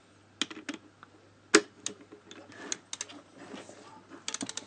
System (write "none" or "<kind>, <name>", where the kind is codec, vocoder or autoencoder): none